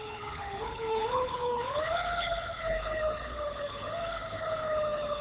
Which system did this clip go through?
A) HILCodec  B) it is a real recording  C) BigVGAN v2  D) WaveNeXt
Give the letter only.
A